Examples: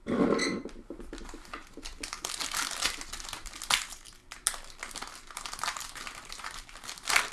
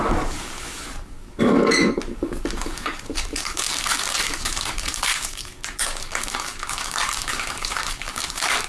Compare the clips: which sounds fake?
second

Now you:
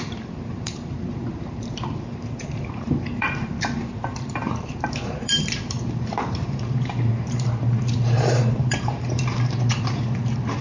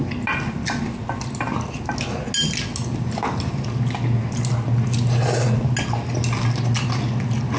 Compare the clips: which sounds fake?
first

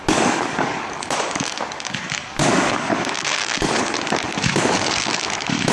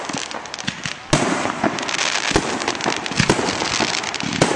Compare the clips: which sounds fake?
first